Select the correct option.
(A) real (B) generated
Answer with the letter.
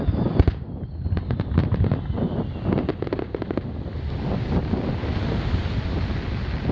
A